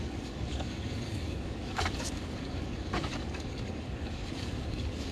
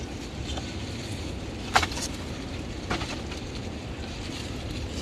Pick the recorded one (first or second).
second